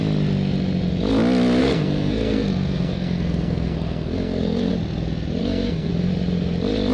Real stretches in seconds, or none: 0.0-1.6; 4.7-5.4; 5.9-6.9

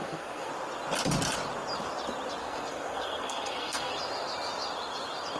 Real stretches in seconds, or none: 0.5-2.4; 3.9-5.4

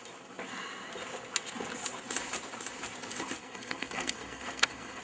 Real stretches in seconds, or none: 0.0-3.4

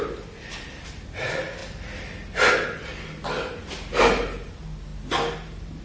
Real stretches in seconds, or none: 0.0-5.8

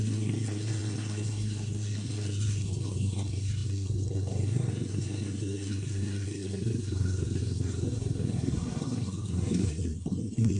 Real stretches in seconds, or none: none

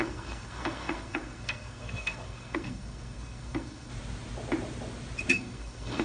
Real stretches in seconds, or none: 3.9-5.3

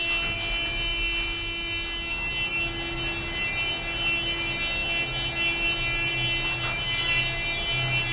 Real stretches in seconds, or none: 0.0-8.1